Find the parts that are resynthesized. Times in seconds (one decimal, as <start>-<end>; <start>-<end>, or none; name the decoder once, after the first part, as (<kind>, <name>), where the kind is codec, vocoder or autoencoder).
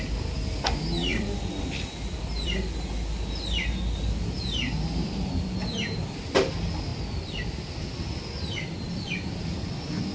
1.1-2.6 (vocoder, BigVGAN v2); 6.9-9.4